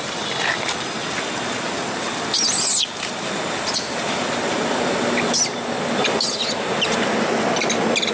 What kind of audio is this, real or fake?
real